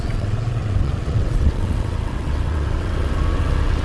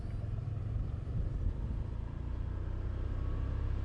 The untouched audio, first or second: second